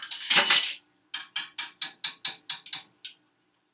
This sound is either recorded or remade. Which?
recorded